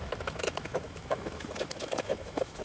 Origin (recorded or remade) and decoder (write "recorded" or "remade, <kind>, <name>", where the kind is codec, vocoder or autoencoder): remade, autoencoder, DAC-VAE